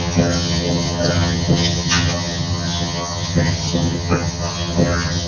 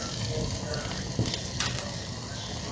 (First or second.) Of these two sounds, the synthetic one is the first